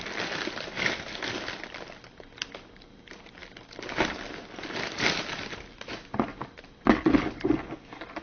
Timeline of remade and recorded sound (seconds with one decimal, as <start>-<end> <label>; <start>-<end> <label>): 0.0-8.2 recorded